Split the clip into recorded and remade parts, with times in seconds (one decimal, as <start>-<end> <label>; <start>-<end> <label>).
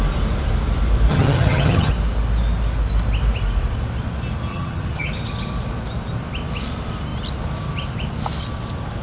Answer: 0.0-1.1 recorded; 1.1-1.9 remade; 1.9-4.5 recorded; 4.5-5.1 remade; 5.1-9.0 recorded